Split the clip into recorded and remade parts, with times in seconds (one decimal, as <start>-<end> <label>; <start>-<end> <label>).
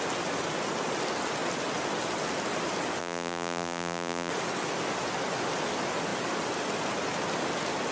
0.0-3.0 recorded; 3.0-4.3 remade; 4.3-7.9 recorded